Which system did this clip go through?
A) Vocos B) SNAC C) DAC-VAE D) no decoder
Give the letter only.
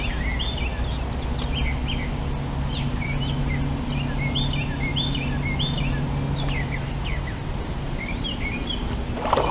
D